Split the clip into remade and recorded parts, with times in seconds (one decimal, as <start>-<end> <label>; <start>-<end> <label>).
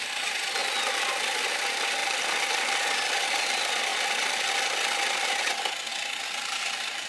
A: 0.0-2.0 recorded; 2.0-2.7 remade; 2.7-7.1 recorded